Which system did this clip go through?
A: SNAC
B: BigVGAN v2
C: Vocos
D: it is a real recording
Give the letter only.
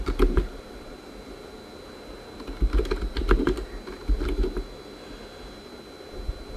D